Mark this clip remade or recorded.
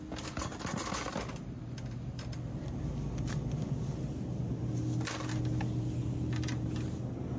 recorded